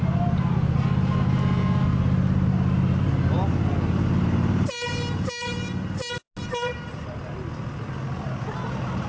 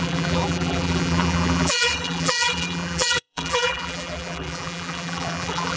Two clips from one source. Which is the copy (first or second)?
second